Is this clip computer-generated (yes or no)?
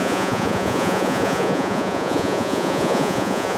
yes